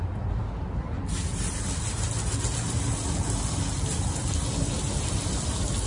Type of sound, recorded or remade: recorded